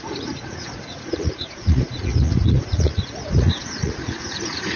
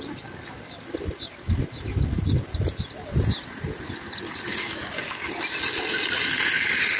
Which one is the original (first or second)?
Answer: second